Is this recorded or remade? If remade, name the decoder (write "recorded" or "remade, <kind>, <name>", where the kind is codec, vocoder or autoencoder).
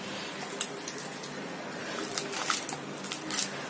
recorded